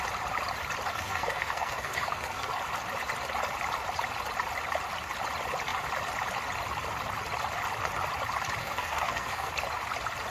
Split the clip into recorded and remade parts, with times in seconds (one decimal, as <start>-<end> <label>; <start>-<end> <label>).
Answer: 0.0-0.9 recorded; 0.9-2.5 remade; 2.5-8.6 recorded; 8.6-9.5 remade; 9.5-10.3 recorded